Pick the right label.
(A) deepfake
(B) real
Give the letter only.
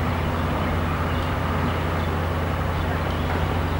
B